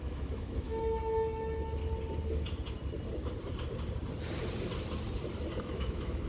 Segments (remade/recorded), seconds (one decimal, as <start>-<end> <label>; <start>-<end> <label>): 0.0-1.8 remade; 1.8-5.6 recorded; 5.6-6.3 remade